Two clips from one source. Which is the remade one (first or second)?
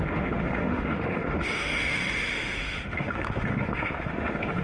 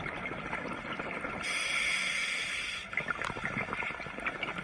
first